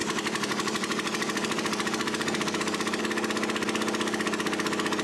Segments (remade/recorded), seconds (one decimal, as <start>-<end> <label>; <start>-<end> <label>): 0.0-3.0 remade; 3.0-5.0 recorded